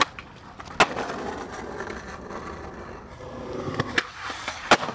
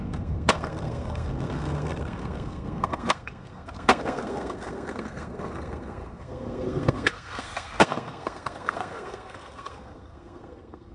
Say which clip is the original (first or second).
first